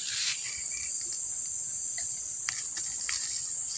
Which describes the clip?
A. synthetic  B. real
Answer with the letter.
B